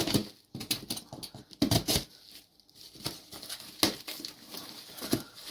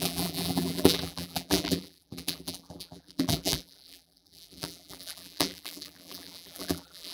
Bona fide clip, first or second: first